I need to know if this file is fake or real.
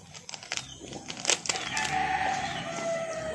real